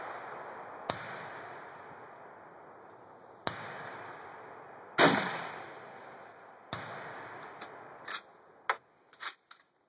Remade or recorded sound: recorded